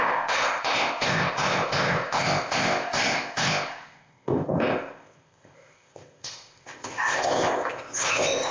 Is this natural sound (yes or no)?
no